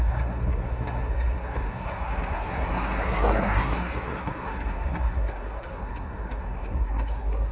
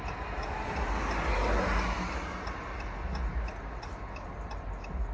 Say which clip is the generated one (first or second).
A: first